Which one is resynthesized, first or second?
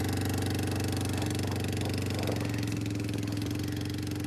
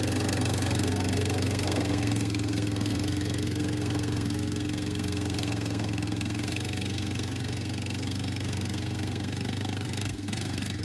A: second